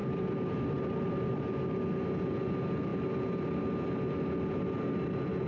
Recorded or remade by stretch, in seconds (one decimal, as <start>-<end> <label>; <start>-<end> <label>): 0.0-1.4 remade; 1.4-5.5 recorded